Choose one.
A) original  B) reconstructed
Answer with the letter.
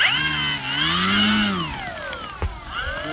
A